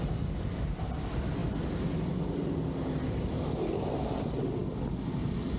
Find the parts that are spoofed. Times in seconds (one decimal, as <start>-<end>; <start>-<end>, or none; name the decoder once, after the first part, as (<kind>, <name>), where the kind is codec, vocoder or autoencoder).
none